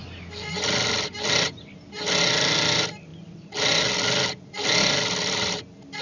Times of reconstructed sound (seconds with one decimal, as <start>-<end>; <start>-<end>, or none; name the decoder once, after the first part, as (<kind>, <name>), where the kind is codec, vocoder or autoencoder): none